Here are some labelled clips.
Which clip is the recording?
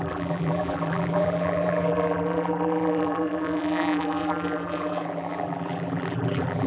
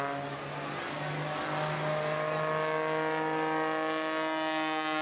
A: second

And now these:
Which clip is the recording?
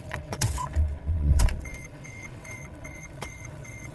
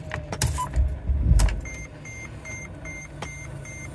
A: second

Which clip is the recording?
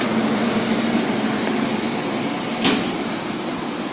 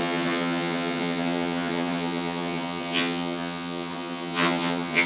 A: first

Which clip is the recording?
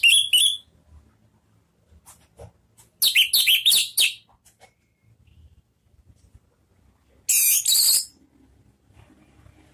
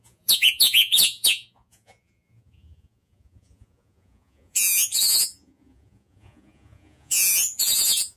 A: first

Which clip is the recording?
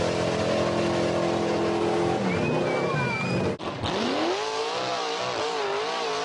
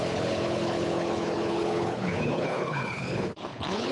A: first